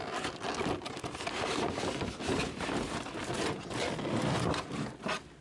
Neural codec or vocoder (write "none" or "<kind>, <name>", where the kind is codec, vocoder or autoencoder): none